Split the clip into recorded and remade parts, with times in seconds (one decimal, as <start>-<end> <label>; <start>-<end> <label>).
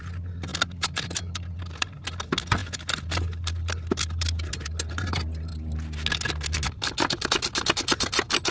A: 0.0-8.5 recorded